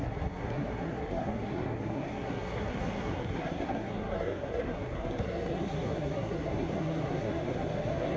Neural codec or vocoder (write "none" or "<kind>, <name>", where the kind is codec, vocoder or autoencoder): codec, SNAC